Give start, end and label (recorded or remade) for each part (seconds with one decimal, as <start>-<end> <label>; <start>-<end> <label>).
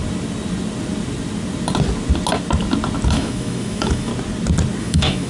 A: 0.0-3.1 recorded; 3.1-4.1 remade; 4.1-4.8 recorded; 4.8-5.3 remade